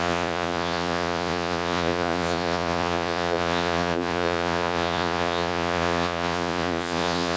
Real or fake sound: fake